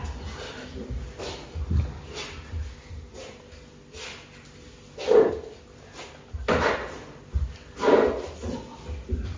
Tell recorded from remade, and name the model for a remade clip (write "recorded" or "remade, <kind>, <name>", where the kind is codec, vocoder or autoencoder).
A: recorded